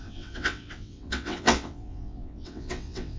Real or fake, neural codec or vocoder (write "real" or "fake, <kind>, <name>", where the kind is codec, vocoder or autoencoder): fake, vocoder, WaveNeXt